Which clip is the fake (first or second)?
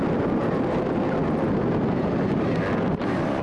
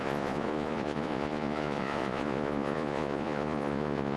second